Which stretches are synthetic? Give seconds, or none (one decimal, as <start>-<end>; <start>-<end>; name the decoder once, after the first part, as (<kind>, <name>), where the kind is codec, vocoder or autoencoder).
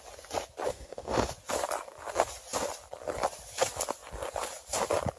0.7-1.3 (autoencoder, DAC-VAE)